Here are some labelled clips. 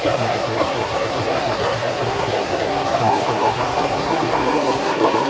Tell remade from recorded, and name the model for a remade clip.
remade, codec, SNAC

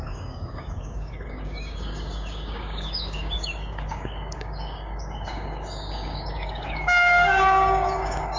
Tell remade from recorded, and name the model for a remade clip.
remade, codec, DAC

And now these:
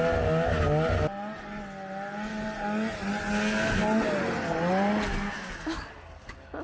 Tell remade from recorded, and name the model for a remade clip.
recorded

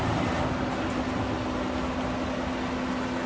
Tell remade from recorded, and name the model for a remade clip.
recorded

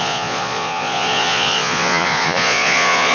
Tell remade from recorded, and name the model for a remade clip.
remade, vocoder, Vocos